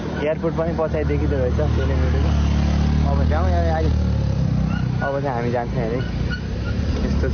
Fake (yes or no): no